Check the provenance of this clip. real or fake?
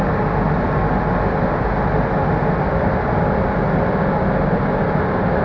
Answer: real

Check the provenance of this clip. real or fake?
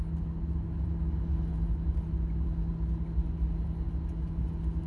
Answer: real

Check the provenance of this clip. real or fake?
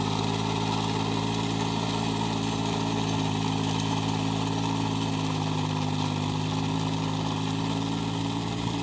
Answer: real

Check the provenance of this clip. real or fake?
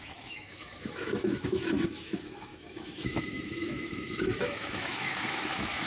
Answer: fake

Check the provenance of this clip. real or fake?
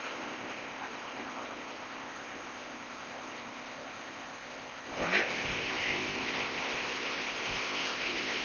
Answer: fake